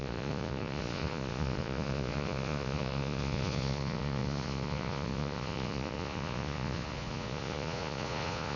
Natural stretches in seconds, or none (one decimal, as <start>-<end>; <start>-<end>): none